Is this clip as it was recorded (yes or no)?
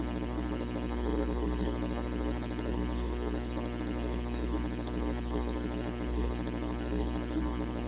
no